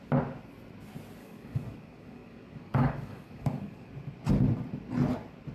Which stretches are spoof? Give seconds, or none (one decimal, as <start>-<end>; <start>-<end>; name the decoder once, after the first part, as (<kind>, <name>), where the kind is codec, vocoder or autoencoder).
1.2-3.9 (codec, DAC)